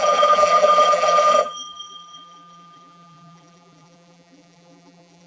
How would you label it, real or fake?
fake